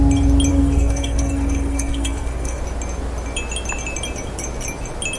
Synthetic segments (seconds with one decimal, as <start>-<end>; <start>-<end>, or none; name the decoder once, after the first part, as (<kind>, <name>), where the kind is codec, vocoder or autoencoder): 0.5-2.6 (codec, SNAC)